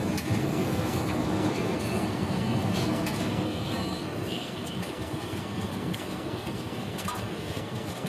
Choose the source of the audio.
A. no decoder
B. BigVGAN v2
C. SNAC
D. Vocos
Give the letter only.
C